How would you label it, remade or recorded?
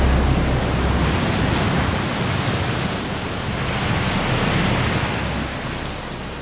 recorded